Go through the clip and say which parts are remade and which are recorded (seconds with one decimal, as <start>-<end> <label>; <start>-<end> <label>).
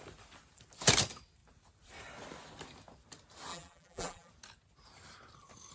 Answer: 0.0-3.5 recorded; 3.5-4.3 remade; 4.3-5.7 recorded